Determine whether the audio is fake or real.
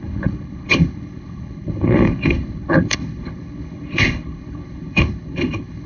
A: fake